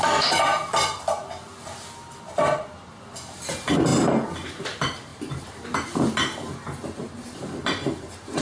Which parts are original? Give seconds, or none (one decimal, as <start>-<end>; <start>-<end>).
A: 0.0-5.1; 5.6-7.0